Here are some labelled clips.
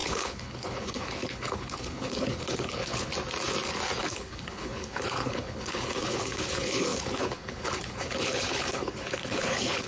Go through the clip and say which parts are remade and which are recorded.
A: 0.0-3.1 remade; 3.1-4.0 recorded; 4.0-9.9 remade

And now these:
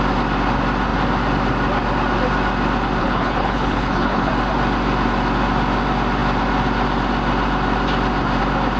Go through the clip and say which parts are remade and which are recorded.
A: 0.0-3.0 recorded; 3.0-4.3 remade; 4.3-8.8 recorded